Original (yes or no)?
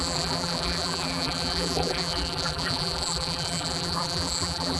no